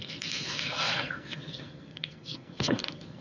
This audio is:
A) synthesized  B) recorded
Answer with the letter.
A